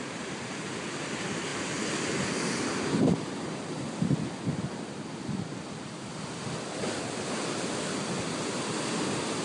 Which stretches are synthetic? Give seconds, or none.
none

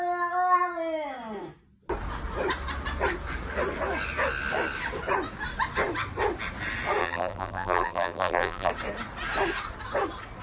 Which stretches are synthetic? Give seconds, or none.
7.0-8.7

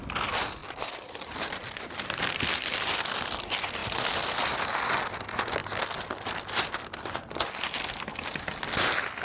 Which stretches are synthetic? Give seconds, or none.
0.6-3.4; 3.8-4.5; 5.6-7.4